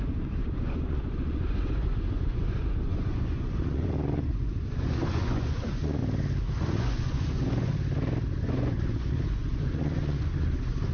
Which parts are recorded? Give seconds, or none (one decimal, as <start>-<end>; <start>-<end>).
6.0-6.6; 7.7-8.3